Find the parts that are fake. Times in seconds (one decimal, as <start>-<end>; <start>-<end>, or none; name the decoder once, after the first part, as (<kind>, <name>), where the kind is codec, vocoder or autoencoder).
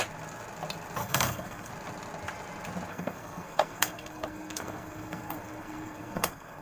1.0-1.7 (codec, SNAC); 2.9-6.6